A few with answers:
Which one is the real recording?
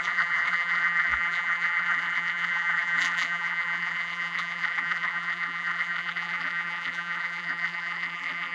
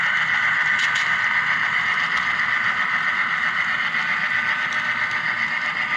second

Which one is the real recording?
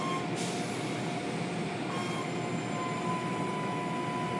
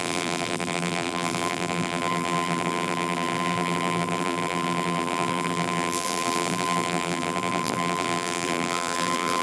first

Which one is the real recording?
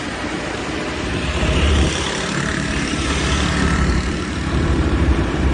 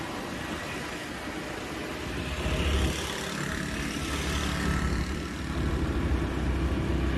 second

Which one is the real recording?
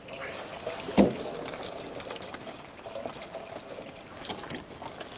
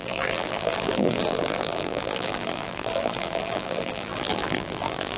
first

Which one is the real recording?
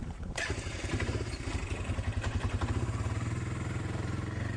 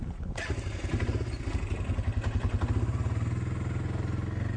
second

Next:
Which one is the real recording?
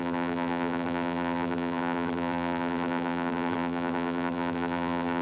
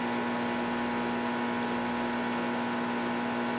second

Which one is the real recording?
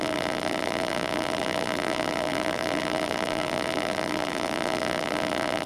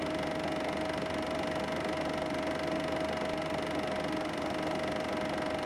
second